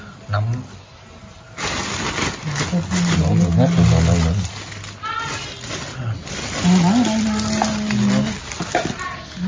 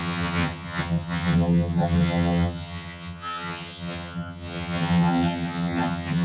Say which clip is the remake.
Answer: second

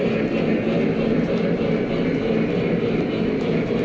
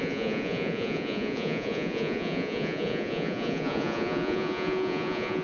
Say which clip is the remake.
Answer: second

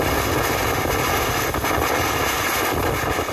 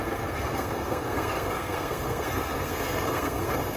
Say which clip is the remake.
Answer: second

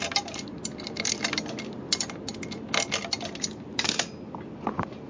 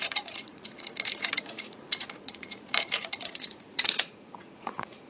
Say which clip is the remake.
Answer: second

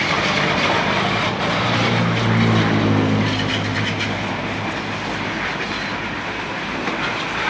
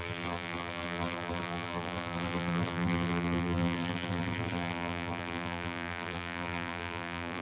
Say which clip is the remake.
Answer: second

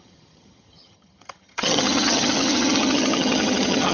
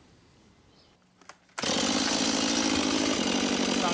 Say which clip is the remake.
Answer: first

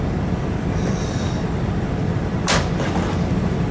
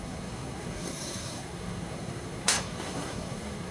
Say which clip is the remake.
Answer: second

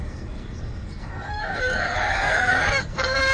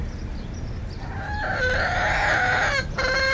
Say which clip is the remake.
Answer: first